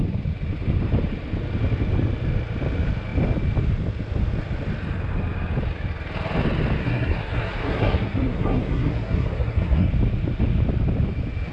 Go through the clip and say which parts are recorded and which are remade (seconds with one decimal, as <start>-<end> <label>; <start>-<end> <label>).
0.0-6.8 recorded; 6.8-9.9 remade; 9.9-11.5 recorded